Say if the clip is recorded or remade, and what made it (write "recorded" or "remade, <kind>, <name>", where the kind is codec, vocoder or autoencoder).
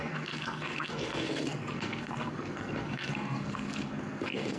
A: remade, codec, SNAC